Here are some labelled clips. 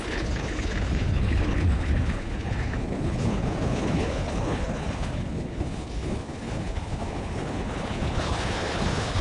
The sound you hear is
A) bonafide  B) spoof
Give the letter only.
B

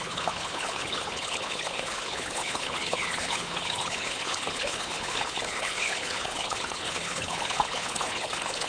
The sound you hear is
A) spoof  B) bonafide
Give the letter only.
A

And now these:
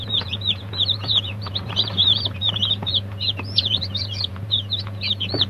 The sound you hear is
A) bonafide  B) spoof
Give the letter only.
B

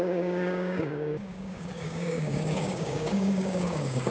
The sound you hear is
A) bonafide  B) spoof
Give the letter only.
B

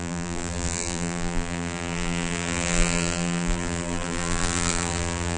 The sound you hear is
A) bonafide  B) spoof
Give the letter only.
B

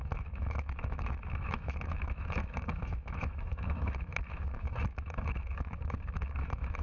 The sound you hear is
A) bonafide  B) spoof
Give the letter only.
B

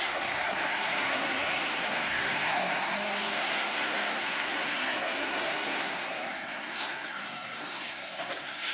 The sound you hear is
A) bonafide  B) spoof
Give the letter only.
B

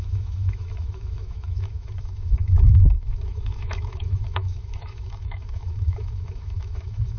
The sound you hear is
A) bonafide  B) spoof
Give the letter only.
B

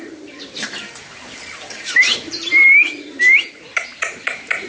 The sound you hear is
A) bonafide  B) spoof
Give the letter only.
B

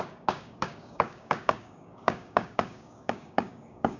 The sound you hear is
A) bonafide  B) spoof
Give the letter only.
B